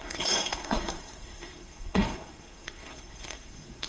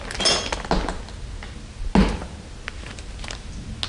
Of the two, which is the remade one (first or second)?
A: first